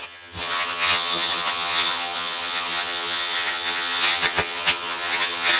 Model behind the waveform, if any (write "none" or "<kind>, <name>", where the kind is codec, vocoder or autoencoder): vocoder, HiFi-GAN